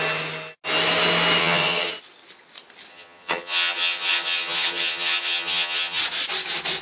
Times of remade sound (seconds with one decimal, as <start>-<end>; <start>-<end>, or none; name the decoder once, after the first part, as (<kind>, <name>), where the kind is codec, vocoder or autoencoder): 1.4-1.9 (vocoder, HiFi-GAN); 2.9-6.0